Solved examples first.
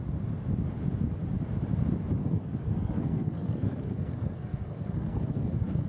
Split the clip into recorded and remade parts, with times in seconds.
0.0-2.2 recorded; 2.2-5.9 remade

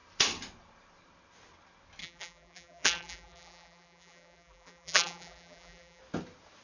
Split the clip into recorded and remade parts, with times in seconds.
0.0-2.0 recorded; 2.0-6.0 remade; 6.0-6.6 recorded

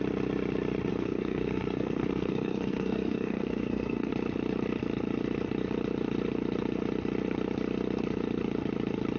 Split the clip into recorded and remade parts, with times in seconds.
0.0-0.9 recorded; 0.9-4.1 remade; 4.1-9.2 recorded

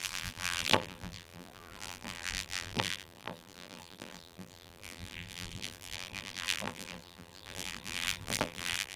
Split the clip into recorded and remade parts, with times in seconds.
0.0-9.0 remade

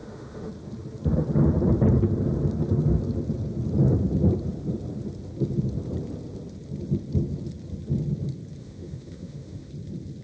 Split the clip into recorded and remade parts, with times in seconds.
0.0-0.5 remade; 0.5-8.6 recorded; 8.6-9.7 remade; 9.7-10.2 recorded

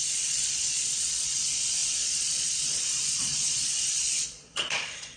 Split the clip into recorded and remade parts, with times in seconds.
0.0-5.2 remade